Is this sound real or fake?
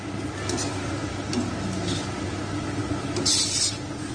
real